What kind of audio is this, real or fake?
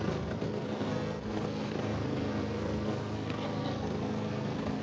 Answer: fake